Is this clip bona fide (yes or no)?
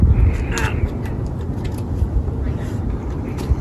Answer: yes